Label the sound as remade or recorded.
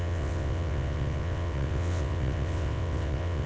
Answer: remade